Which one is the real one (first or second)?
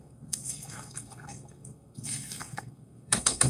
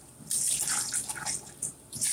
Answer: second